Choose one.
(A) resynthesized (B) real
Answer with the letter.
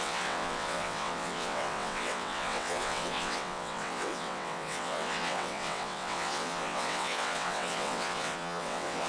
A